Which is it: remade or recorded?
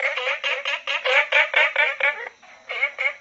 recorded